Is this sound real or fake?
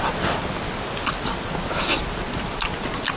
real